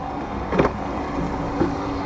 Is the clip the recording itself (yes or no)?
no